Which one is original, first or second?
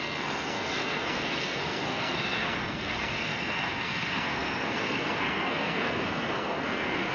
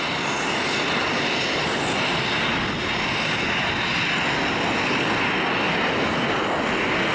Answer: second